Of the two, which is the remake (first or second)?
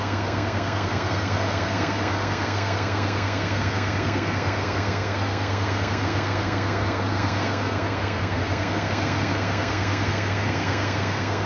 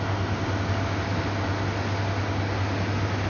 first